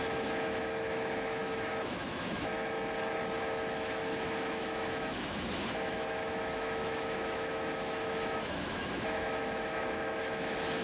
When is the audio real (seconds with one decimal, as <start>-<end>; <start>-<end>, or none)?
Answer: 2.5-3.4